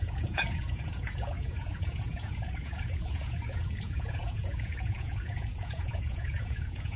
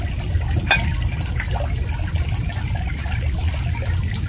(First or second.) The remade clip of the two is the first